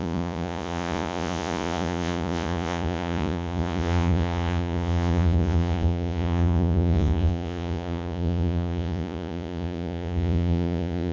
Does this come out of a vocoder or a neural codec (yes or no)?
yes